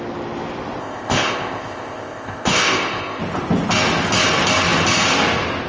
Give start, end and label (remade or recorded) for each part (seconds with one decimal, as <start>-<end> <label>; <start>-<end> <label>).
0.0-0.8 recorded; 0.8-3.2 remade; 3.2-5.7 recorded